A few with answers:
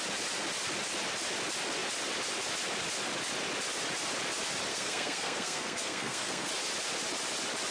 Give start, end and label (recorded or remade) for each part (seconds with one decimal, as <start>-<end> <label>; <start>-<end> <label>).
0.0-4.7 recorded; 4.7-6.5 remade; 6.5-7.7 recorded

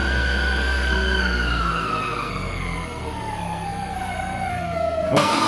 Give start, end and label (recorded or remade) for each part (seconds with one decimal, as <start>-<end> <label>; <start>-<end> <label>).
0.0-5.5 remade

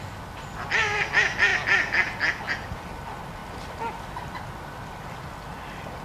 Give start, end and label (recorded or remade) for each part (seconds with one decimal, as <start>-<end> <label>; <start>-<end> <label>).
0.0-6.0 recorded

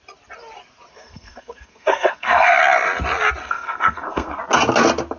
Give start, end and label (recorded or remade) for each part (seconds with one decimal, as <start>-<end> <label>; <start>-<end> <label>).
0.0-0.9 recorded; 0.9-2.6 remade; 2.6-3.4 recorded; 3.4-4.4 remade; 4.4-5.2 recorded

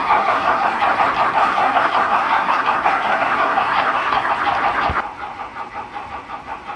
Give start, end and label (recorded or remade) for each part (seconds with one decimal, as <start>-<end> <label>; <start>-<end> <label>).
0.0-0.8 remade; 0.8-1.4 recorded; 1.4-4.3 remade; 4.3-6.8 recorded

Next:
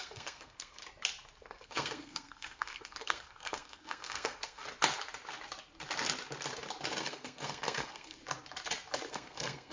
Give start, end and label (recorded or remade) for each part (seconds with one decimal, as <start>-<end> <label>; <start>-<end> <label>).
0.0-0.8 remade; 0.8-1.4 recorded; 1.4-4.6 remade; 4.6-7.0 recorded; 7.0-8.2 remade; 8.2-9.1 recorded; 9.1-9.7 remade